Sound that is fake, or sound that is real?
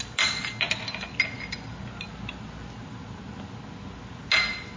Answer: real